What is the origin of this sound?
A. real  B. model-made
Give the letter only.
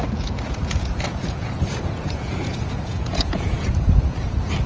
B